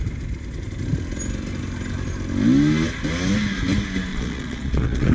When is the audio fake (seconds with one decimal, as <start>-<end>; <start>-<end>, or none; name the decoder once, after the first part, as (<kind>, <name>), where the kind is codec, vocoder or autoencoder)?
4.1-5.1 (vocoder, Vocos)